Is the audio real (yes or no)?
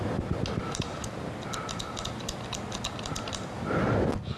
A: yes